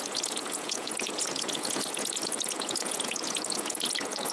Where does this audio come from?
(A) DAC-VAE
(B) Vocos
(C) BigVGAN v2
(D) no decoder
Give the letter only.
B